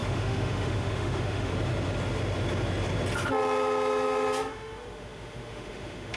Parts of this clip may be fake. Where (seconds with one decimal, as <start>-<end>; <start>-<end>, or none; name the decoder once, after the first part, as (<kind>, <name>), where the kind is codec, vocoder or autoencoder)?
0.0-1.5 (autoencoder, DAC-VAE); 4.5-6.2